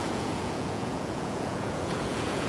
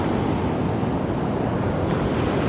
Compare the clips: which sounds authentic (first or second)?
second